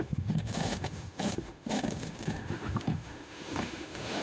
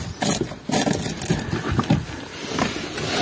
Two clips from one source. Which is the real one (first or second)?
second